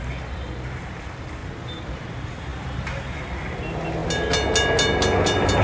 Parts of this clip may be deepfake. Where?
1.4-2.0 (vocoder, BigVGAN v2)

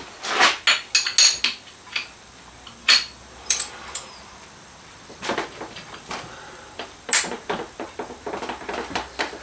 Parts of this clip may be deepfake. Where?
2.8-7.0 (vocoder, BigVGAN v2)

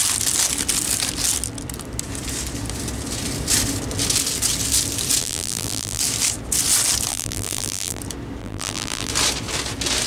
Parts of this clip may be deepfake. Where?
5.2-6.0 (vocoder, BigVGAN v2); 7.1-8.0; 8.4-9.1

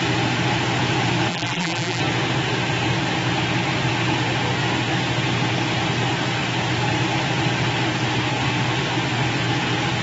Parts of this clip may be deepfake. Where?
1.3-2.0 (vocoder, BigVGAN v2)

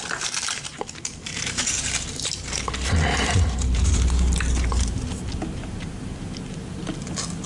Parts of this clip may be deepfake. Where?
0.7-5.1 (vocoder, BigVGAN v2)